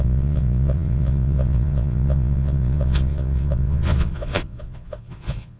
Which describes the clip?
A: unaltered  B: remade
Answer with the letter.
B